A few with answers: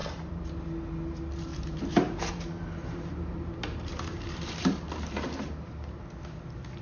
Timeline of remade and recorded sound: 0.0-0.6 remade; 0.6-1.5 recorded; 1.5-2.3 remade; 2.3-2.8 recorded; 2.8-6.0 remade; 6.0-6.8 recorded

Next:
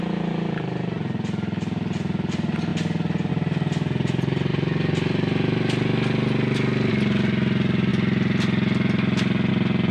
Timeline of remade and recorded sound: 0.0-9.9 recorded

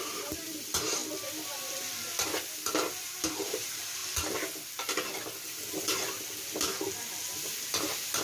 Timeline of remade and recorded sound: 0.0-1.0 remade; 1.0-3.0 recorded; 3.0-4.0 remade; 4.0-7.4 recorded; 7.4-8.2 remade

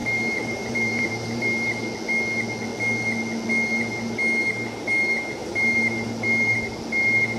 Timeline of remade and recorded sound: 0.0-1.7 remade; 1.7-5.4 recorded; 5.4-6.1 remade; 6.1-7.4 recorded

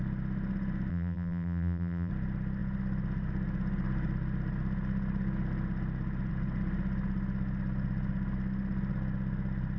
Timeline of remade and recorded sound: 0.0-0.9 recorded; 0.9-2.1 remade; 2.1-9.8 recorded

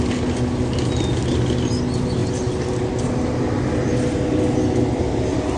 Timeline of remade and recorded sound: 0.0-5.6 recorded

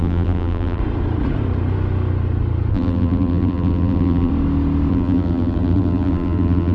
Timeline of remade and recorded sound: 0.0-0.8 remade; 0.8-2.7 recorded; 2.7-4.3 remade; 4.3-4.9 recorded; 4.9-6.7 remade

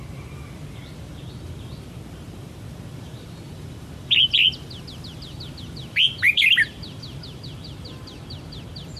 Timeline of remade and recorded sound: 0.0-9.0 remade